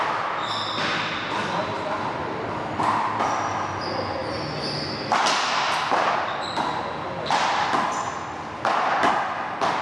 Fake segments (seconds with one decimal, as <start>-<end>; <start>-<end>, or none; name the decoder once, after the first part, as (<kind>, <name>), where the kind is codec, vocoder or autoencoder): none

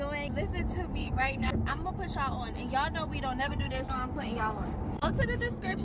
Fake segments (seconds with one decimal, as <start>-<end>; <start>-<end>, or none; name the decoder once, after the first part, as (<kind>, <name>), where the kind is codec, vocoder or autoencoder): 1.0-1.9 (codec, DAC); 3.4-5.8

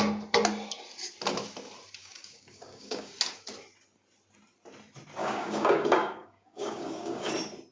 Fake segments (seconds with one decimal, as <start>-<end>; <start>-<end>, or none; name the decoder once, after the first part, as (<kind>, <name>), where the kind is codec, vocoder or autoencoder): 2.0-3.1 (codec, DAC); 5.2-7.3